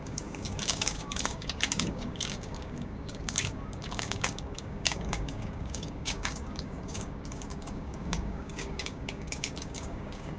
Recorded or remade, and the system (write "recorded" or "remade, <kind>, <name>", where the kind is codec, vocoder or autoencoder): remade, codec, DAC